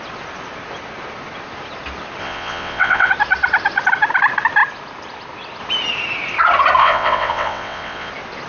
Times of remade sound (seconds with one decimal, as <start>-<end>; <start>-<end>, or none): 2.2-3.1; 6.8-8.1